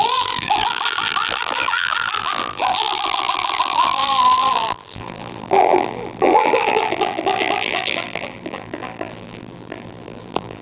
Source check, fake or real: fake